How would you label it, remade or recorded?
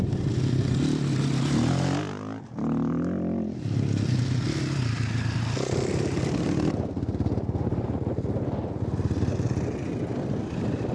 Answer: recorded